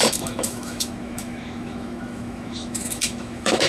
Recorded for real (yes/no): no